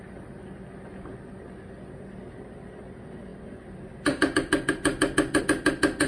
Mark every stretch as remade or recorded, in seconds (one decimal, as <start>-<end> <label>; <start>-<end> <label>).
0.0-6.1 recorded